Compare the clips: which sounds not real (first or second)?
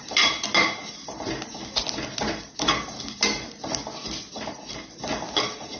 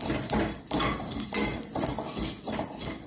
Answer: second